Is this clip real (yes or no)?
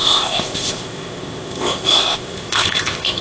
no